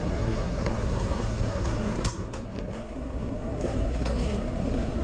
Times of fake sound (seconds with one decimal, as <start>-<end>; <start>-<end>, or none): 0.0-5.0